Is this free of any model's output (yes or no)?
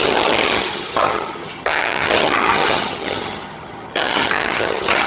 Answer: no